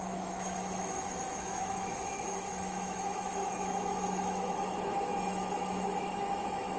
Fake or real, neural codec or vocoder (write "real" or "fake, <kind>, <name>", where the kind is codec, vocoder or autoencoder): fake, autoencoder, DAC-VAE